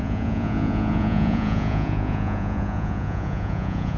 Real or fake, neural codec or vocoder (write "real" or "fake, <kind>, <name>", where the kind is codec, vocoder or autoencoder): fake, vocoder, Vocos